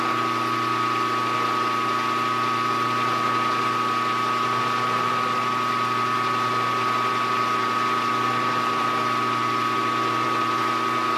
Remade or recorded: recorded